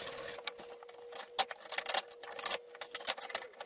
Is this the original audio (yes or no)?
yes